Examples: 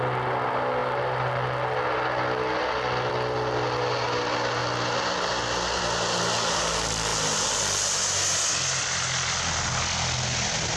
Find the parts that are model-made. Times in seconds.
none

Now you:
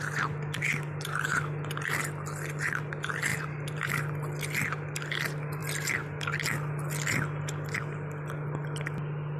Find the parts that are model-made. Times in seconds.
3.3-3.9 (vocoder, BigVGAN v2)

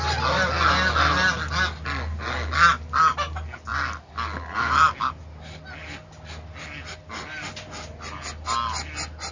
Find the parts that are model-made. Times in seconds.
none

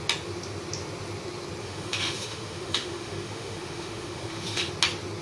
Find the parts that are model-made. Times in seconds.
1.6-4.7 (autoencoder, DAC-VAE)

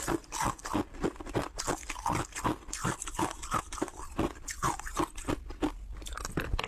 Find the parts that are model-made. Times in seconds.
none

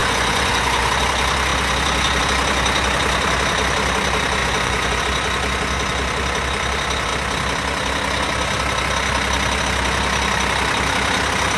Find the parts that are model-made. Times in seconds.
0.0-1.0 (vocoder, Vocos); 4.4-5.0

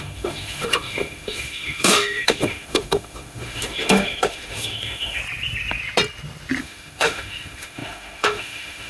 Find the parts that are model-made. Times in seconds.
0.0-5.2 (autoencoder, DAC-VAE); 6.6-8.9

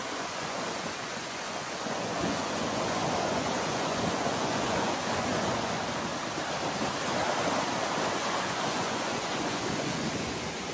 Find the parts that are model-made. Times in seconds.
0.0-6.1 (vocoder, Vocos); 8.1-10.7